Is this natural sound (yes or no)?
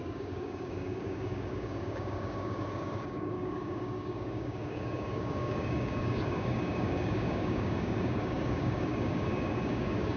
no